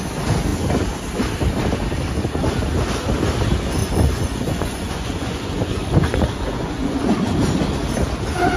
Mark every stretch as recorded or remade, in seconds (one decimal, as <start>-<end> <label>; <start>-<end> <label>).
0.0-3.8 recorded; 3.8-7.1 remade; 7.1-8.6 recorded